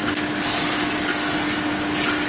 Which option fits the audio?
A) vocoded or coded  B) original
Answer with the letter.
B